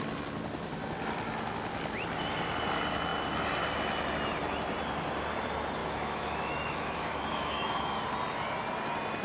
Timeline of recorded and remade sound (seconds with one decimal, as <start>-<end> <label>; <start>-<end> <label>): 0.0-5.8 recorded; 5.8-8.0 remade; 8.0-9.2 recorded